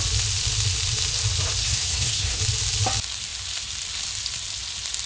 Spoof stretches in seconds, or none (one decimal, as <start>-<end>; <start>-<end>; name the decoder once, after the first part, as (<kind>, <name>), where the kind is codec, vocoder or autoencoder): 1.6-2.4 (codec, SNAC)